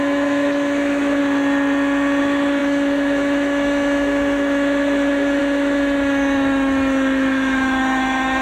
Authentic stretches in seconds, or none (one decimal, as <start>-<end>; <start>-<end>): 1.2-2.2